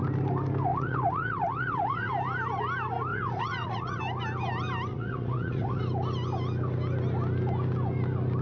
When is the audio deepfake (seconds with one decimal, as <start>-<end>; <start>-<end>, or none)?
0.7-2.1; 3.1-4.0; 4.9-5.8